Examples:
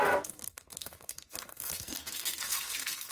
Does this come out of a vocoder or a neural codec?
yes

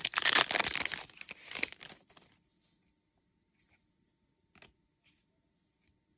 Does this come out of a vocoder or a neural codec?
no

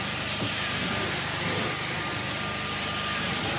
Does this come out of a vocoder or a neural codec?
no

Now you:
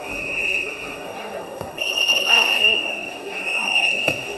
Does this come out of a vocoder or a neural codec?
yes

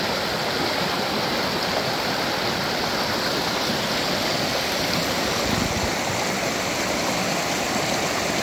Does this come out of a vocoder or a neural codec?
no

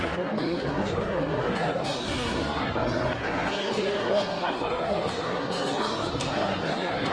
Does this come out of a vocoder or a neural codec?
yes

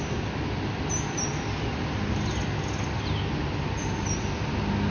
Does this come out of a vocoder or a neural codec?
no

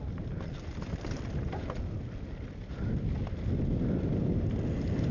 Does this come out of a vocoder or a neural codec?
no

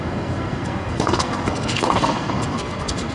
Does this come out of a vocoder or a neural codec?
yes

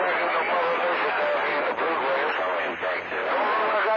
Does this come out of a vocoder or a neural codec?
no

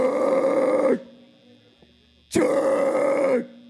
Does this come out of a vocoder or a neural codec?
no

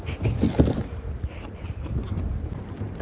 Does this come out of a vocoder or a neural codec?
no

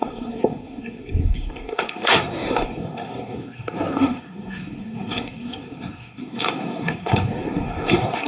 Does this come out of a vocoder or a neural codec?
yes